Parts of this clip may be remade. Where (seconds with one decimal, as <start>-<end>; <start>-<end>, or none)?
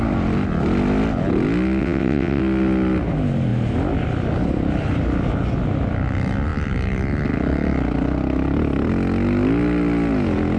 1.8-2.4